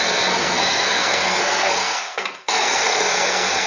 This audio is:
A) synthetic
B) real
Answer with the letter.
A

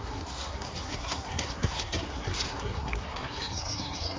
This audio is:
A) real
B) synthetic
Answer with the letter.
B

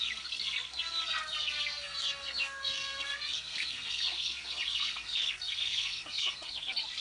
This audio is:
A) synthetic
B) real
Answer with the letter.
A